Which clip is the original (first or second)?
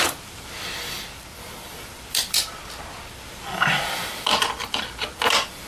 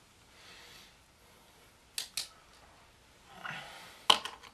second